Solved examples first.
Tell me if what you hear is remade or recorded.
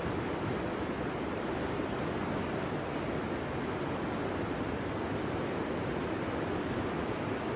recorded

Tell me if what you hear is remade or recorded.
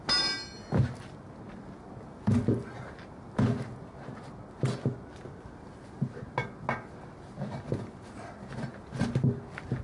recorded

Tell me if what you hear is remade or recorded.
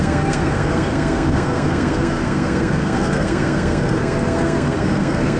remade